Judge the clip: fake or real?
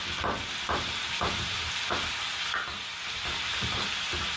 real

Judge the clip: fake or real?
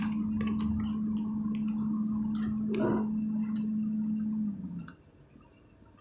real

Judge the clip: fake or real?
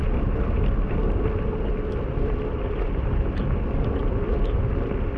real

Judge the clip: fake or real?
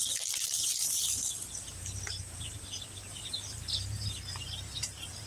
real